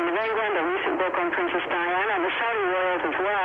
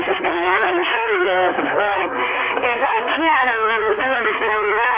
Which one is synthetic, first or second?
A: second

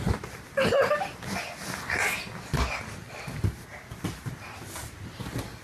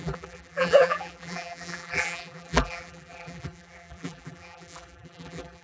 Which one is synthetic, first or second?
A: second